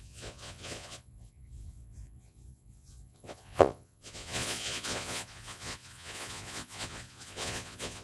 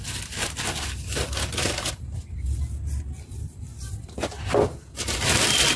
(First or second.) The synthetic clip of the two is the first